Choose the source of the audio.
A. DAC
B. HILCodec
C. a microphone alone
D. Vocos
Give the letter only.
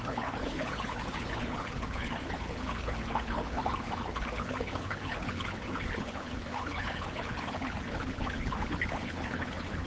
B